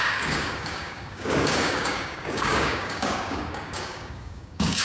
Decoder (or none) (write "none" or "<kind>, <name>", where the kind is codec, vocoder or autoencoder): codec, DAC